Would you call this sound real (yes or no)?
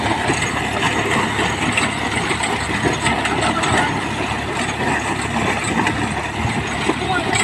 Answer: yes